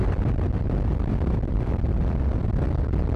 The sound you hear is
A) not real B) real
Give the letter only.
B